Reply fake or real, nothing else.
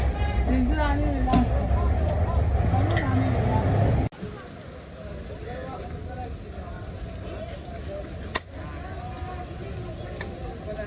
real